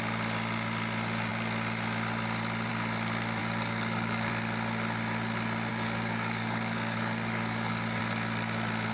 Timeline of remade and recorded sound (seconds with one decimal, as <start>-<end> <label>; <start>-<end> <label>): 0.0-3.4 recorded; 3.4-4.3 remade; 4.3-5.7 recorded; 5.7-8.0 remade; 8.0-8.9 recorded

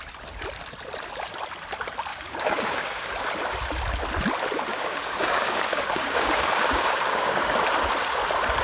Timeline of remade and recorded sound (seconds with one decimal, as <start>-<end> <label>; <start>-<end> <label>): 0.0-2.1 recorded; 2.1-3.1 remade; 3.1-4.7 recorded; 4.7-7.4 remade; 7.4-8.6 recorded

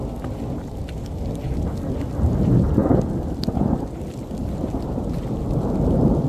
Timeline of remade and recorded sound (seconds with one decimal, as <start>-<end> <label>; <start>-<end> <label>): 0.0-6.3 recorded